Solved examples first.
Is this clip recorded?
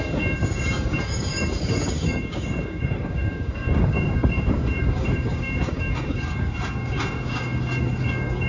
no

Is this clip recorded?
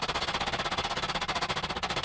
yes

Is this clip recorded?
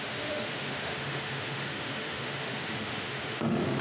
no